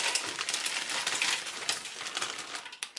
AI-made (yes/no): no